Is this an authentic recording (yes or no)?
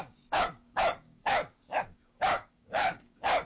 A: no